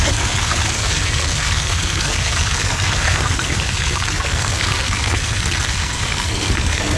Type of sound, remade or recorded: remade